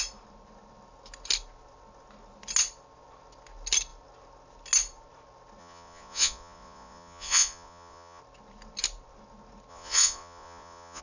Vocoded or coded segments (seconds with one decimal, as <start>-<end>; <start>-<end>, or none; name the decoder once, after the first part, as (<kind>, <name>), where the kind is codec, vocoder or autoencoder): 5.6-8.2 (vocoder, Vocos); 9.7-11.0